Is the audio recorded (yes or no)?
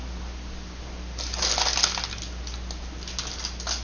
yes